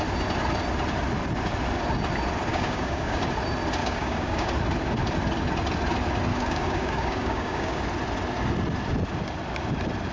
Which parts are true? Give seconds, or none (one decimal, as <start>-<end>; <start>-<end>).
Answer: 0.0-2.5; 3.2-3.8; 4.5-6.3; 7.8-10.1